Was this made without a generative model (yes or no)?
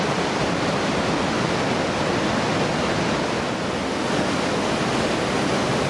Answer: yes